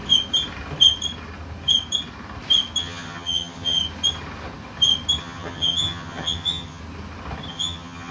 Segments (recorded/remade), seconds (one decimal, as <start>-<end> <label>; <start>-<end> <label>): 0.0-2.8 recorded; 2.8-3.8 remade; 3.8-5.2 recorded; 5.2-6.8 remade; 6.8-7.5 recorded; 7.5-8.1 remade